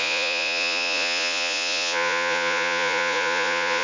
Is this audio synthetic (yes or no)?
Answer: yes